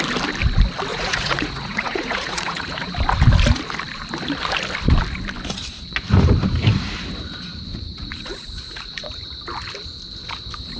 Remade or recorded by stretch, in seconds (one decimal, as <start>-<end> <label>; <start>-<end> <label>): 0.0-0.9 recorded; 0.9-2.9 remade; 2.9-7.7 recorded; 7.7-9.3 remade; 9.3-10.8 recorded